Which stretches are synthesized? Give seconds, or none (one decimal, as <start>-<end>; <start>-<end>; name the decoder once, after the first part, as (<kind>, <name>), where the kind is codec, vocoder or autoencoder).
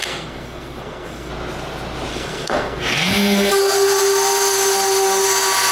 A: 0.0-1.3 (codec, SNAC); 2.1-3.6